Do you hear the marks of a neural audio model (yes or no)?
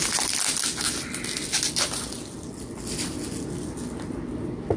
no